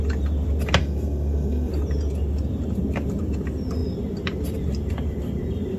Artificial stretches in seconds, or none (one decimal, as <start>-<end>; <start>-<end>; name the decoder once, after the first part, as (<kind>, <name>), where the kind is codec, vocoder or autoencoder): 0.8-1.7 (codec, SNAC)